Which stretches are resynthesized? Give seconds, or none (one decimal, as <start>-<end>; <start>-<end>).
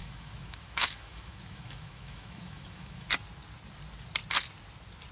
0.0-3.1